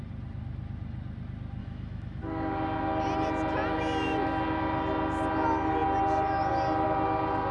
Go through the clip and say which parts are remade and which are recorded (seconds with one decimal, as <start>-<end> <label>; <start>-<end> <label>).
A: 0.0-1.6 recorded; 1.6-2.2 remade; 2.2-7.5 recorded